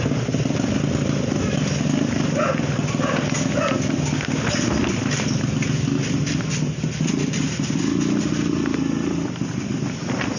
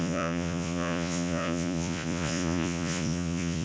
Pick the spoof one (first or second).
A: second